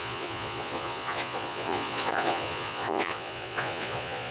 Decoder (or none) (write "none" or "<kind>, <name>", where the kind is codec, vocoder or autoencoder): vocoder, Vocos